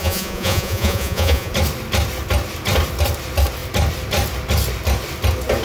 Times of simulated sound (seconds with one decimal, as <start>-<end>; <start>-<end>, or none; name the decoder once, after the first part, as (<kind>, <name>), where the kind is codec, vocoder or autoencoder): 0.0-1.5 (vocoder, Vocos)

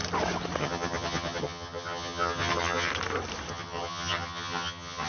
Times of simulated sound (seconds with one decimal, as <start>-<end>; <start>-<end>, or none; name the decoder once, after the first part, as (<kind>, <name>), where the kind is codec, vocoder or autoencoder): 0.6-2.9 (vocoder, HiFi-GAN); 3.5-5.1